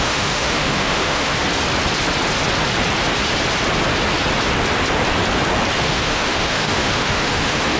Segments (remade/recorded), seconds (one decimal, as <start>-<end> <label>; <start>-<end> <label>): 0.0-1.4 remade; 1.4-5.8 recorded; 5.8-7.8 remade